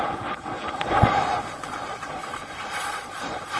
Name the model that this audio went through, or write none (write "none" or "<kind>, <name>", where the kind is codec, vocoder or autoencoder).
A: vocoder, Vocos